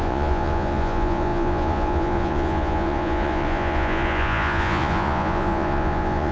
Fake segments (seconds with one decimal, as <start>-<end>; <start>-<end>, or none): 0.0-6.3